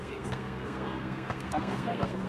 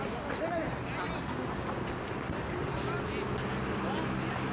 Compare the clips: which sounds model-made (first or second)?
first